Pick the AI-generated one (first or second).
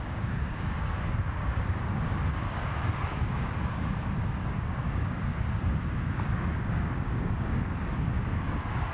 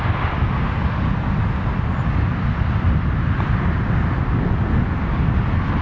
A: first